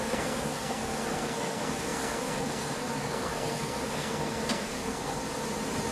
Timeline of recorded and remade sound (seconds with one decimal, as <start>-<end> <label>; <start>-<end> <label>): 0.0-5.2 remade; 5.2-5.9 recorded